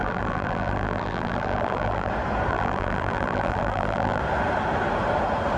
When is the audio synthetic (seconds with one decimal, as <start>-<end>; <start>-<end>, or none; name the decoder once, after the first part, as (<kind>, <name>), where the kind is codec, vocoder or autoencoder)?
0.0-2.1 (vocoder, BigVGAN v2); 2.5-4.2